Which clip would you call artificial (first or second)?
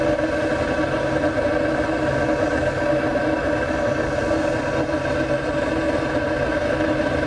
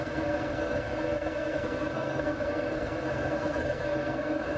second